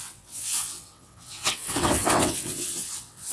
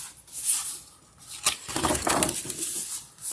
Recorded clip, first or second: second